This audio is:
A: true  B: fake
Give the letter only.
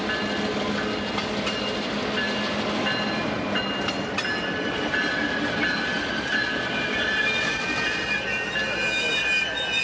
A